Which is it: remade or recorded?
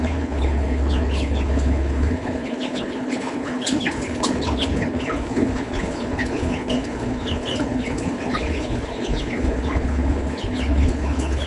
remade